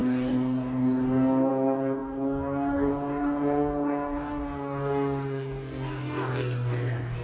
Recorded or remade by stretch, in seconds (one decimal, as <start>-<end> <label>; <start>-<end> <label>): 0.0-7.2 remade